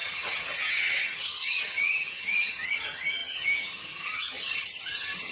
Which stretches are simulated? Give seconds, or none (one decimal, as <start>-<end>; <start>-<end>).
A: 0.0-5.3